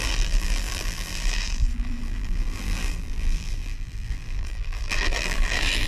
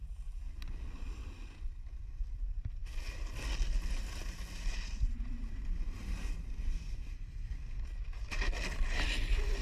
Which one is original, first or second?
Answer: second